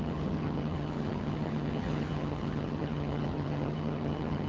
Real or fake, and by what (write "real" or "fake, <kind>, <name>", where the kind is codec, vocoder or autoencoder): fake, vocoder, HiFi-GAN